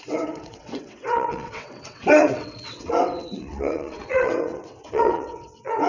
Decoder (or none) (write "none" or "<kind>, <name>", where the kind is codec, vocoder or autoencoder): vocoder, WaveNeXt